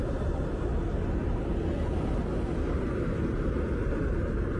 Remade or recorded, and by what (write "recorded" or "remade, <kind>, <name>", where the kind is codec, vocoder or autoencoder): recorded